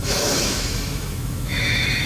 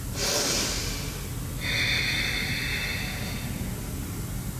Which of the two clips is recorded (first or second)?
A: second